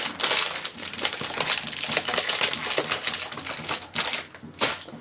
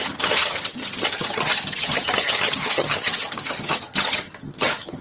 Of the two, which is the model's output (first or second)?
second